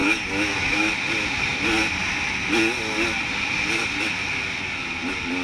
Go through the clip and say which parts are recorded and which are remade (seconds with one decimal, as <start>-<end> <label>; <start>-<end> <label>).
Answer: 0.0-0.9 remade; 0.9-5.4 recorded